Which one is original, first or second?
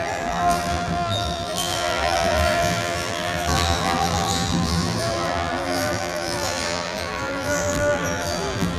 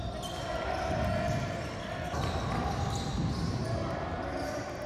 second